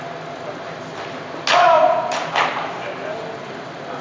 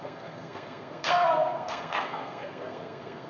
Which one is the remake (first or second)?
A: second